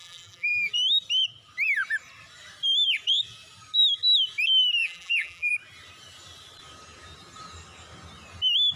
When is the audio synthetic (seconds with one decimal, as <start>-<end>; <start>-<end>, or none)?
0.0-0.7; 4.8-5.5